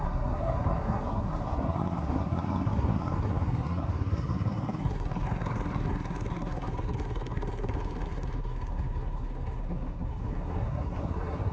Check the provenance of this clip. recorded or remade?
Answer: remade